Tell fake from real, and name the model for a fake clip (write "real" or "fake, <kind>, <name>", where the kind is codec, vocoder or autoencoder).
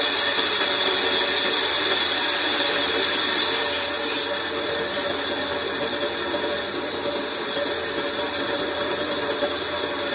real